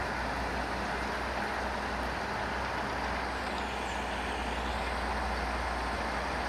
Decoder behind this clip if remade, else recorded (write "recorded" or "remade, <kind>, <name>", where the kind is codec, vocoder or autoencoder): recorded